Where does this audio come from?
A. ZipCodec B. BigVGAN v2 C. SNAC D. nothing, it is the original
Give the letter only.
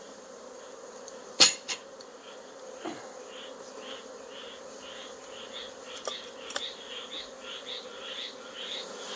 B